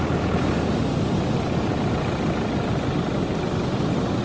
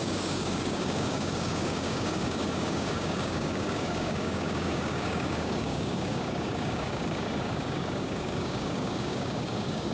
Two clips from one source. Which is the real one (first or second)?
first